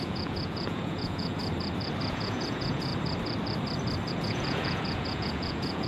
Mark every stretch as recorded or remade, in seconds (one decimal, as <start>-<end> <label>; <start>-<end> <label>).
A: 0.0-1.4 remade; 1.4-2.1 recorded; 2.1-2.9 remade; 2.9-4.1 recorded; 4.1-5.9 remade